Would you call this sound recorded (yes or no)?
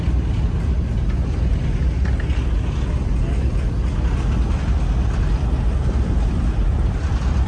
yes